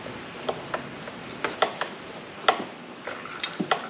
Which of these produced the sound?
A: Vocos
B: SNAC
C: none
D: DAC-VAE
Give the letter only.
C